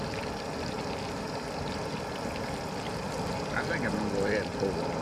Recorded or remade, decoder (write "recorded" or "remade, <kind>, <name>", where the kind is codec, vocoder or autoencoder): recorded